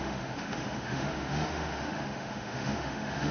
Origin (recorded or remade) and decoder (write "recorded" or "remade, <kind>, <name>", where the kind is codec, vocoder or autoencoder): remade, autoencoder, DAC-VAE